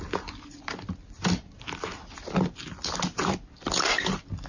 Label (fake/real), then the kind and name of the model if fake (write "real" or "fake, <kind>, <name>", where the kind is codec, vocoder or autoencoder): real